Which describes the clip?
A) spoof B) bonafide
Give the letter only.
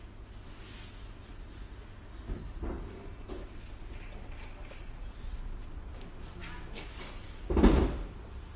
B